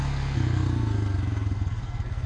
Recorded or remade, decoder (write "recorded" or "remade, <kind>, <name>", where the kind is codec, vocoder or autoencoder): remade, codec, SNAC